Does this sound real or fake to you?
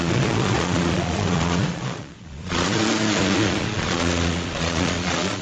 fake